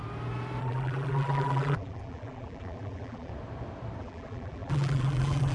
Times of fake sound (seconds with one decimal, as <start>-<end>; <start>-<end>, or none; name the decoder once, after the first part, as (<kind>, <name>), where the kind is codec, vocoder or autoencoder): 0.6-3.3 (vocoder, BigVGAN v2); 4.0-5.5